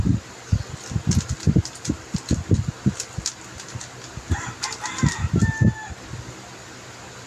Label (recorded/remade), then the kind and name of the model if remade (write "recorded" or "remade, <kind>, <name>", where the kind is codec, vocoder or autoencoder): recorded